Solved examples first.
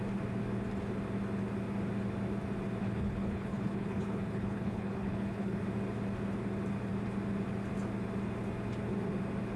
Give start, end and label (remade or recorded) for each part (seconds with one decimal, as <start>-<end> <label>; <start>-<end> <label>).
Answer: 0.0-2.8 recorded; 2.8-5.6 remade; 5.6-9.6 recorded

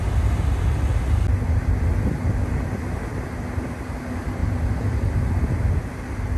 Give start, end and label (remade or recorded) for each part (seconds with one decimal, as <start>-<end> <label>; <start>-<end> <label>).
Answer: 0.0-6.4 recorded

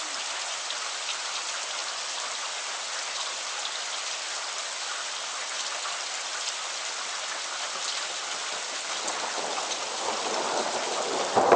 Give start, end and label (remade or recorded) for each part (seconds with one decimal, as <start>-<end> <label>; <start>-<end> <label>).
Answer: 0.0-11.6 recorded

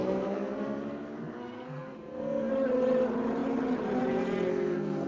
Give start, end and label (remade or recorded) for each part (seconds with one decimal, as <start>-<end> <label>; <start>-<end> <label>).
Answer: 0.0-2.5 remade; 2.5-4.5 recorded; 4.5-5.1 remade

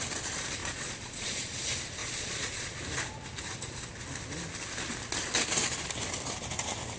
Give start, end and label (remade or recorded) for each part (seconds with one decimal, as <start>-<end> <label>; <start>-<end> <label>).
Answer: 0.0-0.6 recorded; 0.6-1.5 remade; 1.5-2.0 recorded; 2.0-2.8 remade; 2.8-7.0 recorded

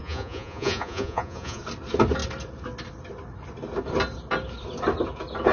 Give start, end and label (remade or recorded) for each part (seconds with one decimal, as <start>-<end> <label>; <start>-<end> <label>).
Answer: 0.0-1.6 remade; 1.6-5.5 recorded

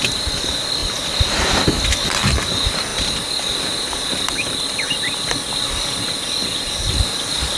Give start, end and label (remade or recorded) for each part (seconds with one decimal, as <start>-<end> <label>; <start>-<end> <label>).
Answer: 0.0-7.6 recorded

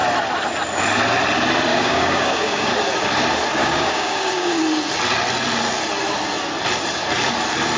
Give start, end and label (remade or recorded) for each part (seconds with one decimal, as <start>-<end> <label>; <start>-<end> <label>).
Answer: 0.0-1.7 recorded; 1.7-2.7 remade; 2.7-3.6 recorded; 3.6-4.6 remade; 4.6-7.8 recorded